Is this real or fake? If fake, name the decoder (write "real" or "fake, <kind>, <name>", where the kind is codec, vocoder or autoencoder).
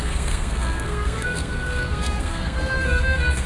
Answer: fake, codec, SNAC